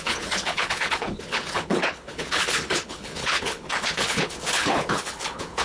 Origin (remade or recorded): remade